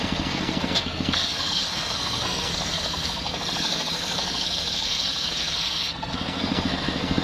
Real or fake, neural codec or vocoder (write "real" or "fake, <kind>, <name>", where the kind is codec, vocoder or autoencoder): fake, codec, SNAC